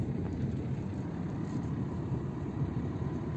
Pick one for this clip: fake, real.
real